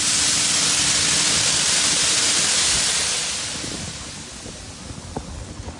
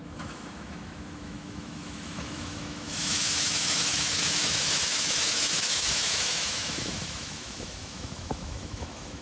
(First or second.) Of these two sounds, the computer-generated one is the second